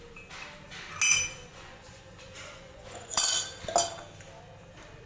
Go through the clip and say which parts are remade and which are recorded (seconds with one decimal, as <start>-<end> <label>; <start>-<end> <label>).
0.0-1.5 recorded; 1.5-3.4 remade; 3.4-5.1 recorded